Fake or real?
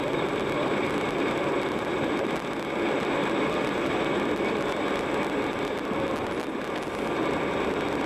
real